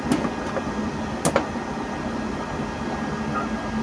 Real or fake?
real